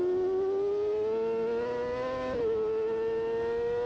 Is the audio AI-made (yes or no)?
no